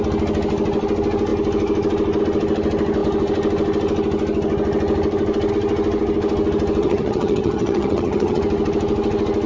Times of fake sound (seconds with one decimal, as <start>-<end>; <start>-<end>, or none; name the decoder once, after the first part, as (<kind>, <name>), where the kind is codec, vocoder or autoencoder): 6.8-8.4 (vocoder, HiFi-GAN)